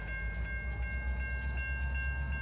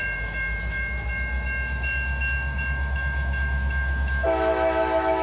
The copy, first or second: second